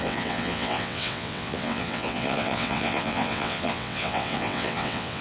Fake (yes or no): yes